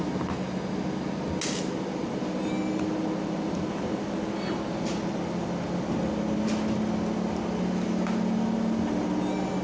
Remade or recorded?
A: recorded